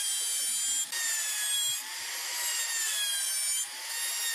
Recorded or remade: recorded